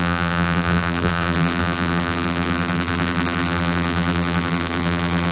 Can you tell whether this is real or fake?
fake